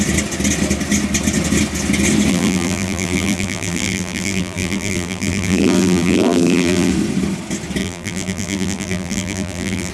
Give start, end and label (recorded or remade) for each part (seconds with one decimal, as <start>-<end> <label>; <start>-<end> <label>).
0.0-2.3 recorded; 2.3-6.9 remade; 6.9-7.8 recorded; 7.8-9.9 remade